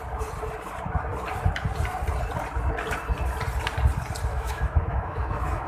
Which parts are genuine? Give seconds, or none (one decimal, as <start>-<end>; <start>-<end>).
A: 0.0-4.3